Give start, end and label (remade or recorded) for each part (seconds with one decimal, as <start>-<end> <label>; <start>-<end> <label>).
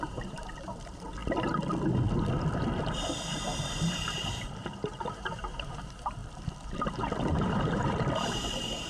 0.0-1.2 remade; 1.2-3.0 recorded; 3.0-6.2 remade; 6.2-7.3 recorded; 7.3-8.9 remade